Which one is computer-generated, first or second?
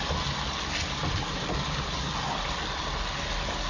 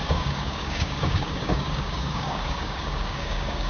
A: second